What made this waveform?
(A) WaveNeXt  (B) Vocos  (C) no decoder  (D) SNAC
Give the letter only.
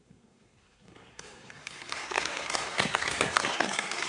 D